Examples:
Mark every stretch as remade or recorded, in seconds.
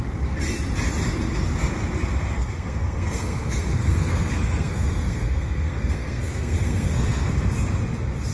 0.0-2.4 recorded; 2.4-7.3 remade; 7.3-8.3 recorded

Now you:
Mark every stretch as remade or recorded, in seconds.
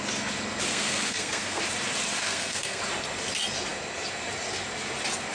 0.0-0.7 recorded; 0.7-1.6 remade; 1.6-2.2 recorded; 2.2-2.8 remade; 2.8-5.3 recorded